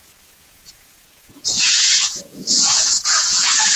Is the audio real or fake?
fake